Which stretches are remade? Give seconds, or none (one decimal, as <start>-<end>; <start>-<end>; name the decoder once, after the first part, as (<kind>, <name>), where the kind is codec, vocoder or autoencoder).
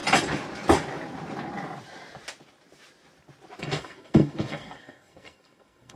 3.6-6.0 (codec, SNAC)